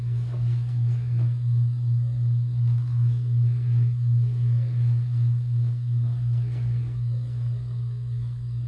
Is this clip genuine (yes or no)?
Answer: no